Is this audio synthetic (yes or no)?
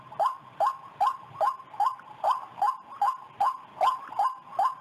no